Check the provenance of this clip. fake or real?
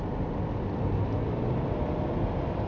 real